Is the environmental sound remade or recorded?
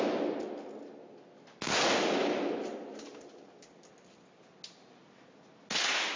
recorded